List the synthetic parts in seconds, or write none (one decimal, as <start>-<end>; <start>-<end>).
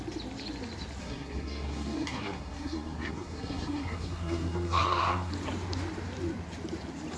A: 1.0-5.3